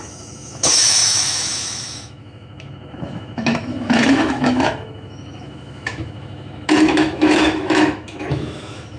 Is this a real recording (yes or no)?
no